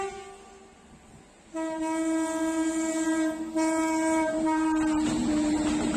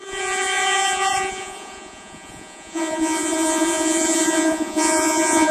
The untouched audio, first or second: first